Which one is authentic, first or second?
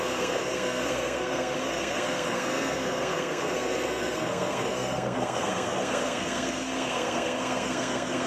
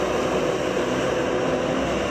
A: second